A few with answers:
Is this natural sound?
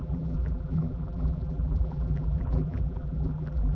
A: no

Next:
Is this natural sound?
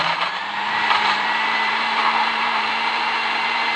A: no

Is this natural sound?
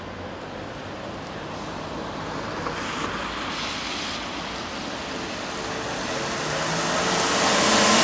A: yes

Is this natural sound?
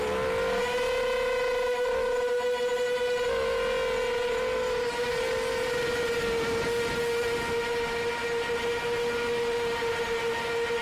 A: yes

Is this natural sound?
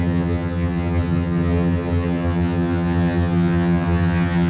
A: no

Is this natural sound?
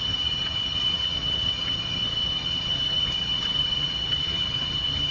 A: no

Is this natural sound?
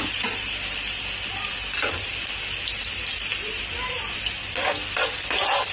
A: yes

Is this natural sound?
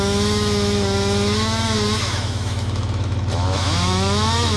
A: no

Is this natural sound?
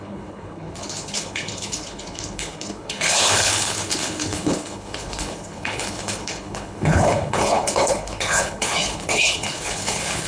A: no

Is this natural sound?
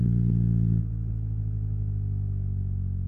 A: yes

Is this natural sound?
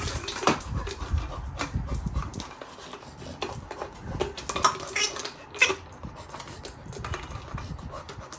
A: yes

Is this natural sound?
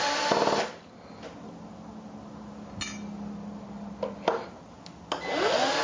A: yes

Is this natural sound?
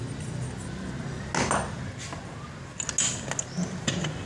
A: yes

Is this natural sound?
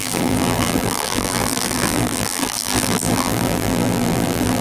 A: no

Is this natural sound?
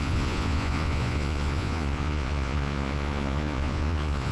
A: no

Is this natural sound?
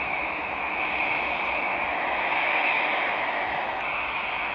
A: no